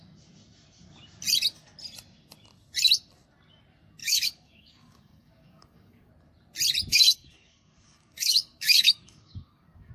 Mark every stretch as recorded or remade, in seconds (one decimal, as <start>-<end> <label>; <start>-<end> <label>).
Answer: 0.0-4.0 recorded; 4.0-6.1 remade; 6.1-6.9 recorded; 6.9-9.9 remade